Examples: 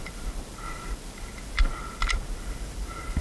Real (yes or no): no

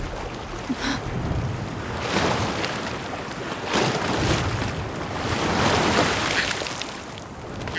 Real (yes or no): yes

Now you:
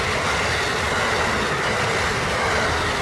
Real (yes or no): yes